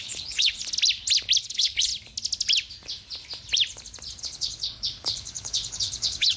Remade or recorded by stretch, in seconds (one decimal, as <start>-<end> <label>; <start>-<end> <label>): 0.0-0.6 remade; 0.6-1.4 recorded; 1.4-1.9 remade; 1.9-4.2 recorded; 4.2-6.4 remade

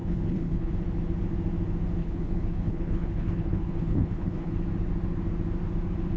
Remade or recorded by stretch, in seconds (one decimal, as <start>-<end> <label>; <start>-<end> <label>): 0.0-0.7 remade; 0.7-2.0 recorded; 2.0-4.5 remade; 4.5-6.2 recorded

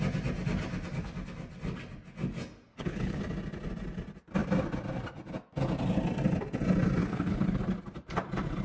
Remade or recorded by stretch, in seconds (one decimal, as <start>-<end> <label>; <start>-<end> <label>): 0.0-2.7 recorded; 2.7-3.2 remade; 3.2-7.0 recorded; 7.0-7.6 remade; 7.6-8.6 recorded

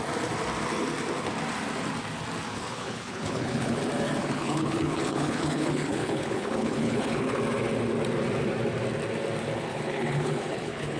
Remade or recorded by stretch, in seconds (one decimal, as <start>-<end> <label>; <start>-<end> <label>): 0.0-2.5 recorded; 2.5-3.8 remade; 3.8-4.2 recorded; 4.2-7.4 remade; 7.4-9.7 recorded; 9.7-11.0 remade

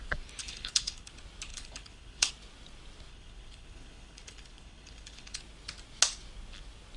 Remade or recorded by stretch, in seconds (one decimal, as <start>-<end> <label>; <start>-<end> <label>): 0.0-0.4 recorded; 0.4-1.1 remade; 1.1-1.5 recorded; 1.5-2.3 remade; 2.3-3.1 recorded; 3.1-5.4 remade; 5.4-7.0 recorded

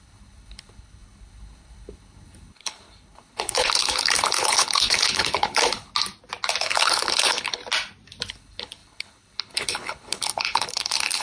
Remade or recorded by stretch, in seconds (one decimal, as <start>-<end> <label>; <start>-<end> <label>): 0.0-5.9 remade; 5.9-6.6 recorded; 6.6-7.6 remade; 7.6-8.3 recorded; 8.3-11.2 remade

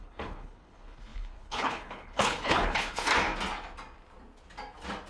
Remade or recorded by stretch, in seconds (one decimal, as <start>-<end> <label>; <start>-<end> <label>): 0.0-3.1 remade; 3.1-5.1 recorded

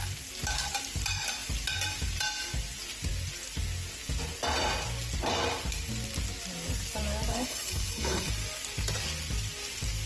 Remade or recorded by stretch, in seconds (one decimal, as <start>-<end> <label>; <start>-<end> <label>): 0.0-7.3 recorded; 7.3-8.3 remade; 8.3-10.1 recorded